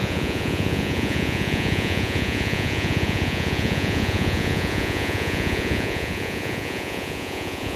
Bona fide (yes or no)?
no